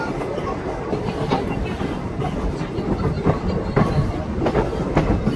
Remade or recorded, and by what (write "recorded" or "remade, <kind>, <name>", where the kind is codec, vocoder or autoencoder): recorded